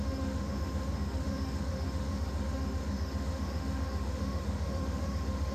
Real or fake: fake